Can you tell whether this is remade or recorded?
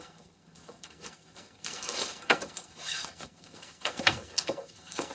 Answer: remade